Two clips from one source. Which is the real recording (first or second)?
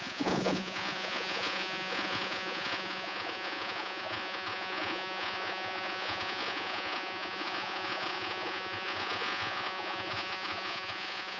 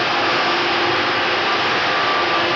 second